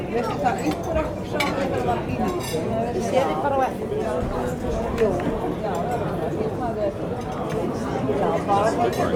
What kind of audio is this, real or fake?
real